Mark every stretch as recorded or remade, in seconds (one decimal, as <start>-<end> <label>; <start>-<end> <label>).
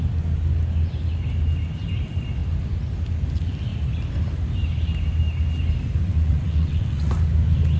0.0-6.0 recorded; 6.0-7.1 remade; 7.1-7.8 recorded